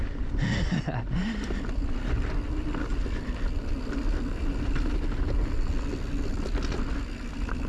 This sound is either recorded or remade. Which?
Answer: recorded